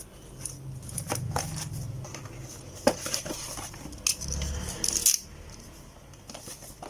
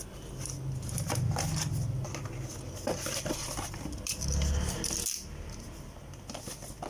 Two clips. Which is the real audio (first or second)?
second